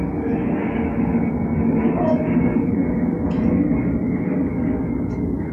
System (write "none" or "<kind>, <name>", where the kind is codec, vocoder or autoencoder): codec, DAC